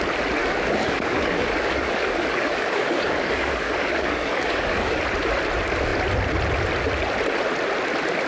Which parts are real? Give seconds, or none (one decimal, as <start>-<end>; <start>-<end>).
0.0-0.4; 5.0-8.3